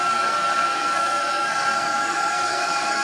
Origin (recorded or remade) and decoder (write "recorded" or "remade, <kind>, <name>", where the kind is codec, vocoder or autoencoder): remade, codec, SNAC